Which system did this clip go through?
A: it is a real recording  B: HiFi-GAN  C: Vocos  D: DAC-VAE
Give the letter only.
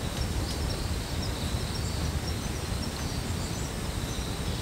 A